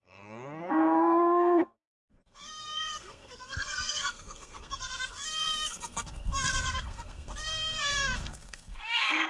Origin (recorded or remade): remade